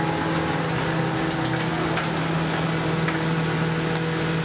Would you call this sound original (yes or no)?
yes